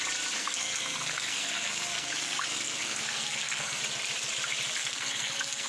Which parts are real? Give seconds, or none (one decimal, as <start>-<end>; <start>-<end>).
0.0-0.4; 3.8-4.8